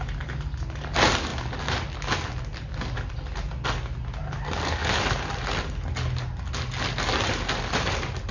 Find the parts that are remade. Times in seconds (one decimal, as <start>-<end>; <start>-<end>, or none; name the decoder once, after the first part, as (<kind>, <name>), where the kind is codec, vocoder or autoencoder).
none